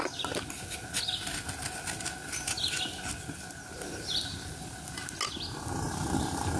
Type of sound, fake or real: real